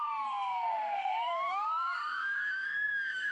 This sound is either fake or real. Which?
fake